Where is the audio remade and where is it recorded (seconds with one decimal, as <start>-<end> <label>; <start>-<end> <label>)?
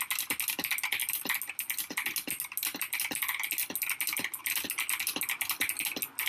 0.0-6.3 recorded